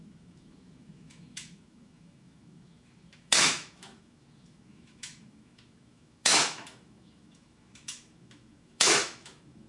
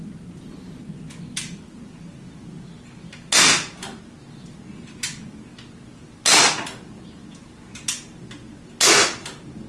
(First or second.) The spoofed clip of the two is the first